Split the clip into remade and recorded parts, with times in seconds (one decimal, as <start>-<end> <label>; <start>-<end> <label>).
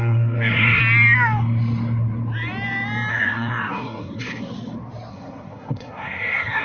0.0-0.8 remade; 0.8-3.1 recorded; 3.1-4.5 remade; 4.5-5.1 recorded; 5.1-6.6 remade